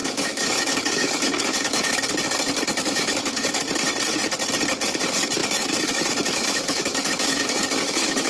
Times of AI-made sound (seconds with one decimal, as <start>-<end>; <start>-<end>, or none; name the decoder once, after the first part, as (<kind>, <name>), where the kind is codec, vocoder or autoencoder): 0.0-2.0 (autoencoder, DAC-VAE); 2.7-3.6; 5.4-8.3